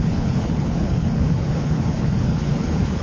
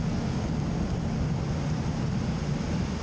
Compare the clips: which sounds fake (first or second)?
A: first